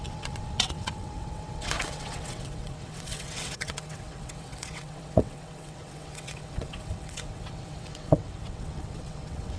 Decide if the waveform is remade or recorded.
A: remade